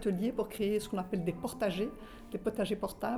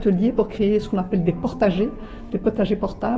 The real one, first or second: first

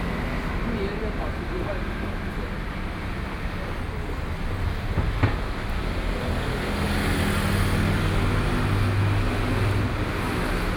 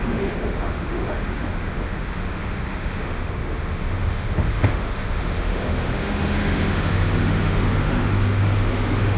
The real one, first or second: first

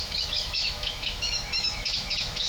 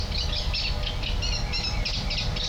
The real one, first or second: second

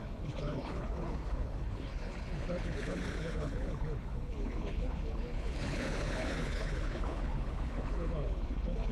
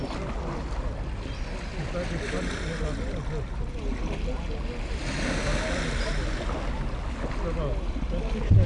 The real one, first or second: second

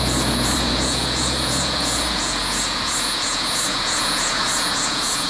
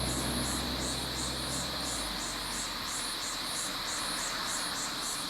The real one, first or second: second